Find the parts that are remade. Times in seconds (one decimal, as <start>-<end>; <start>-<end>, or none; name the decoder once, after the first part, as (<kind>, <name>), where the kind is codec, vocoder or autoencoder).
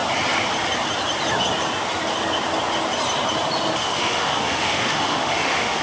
3.8-5.8 (autoencoder, DAC-VAE)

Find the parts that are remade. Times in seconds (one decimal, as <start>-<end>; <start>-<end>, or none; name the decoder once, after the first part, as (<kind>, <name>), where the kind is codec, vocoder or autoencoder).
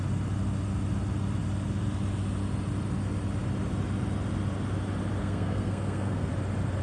5.2-6.3 (codec, SNAC)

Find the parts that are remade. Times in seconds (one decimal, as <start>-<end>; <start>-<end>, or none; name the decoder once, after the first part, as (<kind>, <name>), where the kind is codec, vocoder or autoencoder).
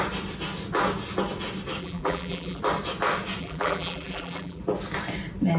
1.8-2.6 (vocoder, BigVGAN v2); 3.4-4.6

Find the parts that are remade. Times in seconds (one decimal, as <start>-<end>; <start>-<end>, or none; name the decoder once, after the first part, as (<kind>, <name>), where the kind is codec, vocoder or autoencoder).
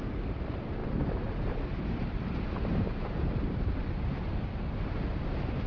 0.8-4.2 (vocoder, BigVGAN v2)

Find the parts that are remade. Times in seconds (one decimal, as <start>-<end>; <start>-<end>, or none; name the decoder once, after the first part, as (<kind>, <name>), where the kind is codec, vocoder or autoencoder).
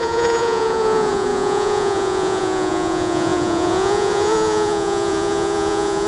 0.0-6.1 (vocoder, Vocos)